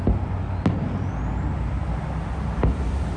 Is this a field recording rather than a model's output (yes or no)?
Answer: yes